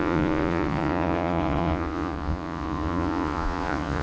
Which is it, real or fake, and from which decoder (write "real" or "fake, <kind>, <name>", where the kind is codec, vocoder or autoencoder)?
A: fake, vocoder, Vocos